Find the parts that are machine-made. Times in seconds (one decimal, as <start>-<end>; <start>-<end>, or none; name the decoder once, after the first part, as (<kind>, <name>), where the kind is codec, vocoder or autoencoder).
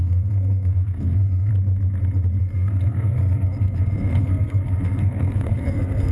0.0-1.5 (codec, SNAC); 2.4-6.1